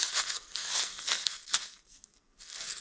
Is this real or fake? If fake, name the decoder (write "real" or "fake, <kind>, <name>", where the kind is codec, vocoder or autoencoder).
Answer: fake, codec, SNAC